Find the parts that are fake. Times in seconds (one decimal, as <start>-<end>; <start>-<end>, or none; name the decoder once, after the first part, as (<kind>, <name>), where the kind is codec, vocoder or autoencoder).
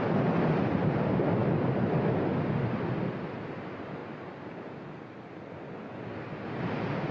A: none